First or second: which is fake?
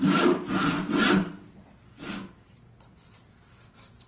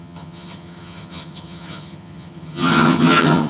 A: second